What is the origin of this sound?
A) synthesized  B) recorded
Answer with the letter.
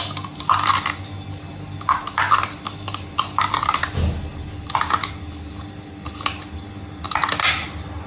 B